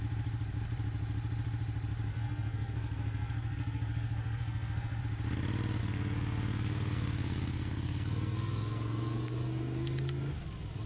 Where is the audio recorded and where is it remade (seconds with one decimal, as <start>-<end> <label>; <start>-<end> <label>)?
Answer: 0.0-2.1 recorded; 2.1-5.0 remade; 5.0-5.8 recorded; 5.8-10.2 remade; 10.2-10.9 recorded